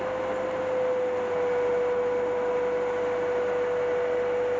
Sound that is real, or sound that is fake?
real